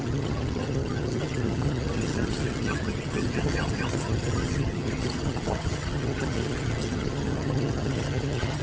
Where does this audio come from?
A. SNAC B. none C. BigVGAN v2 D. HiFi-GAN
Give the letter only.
D